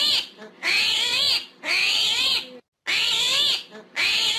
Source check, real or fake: real